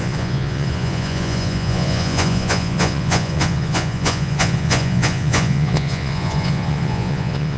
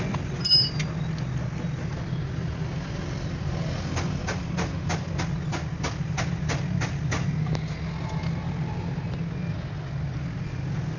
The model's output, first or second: first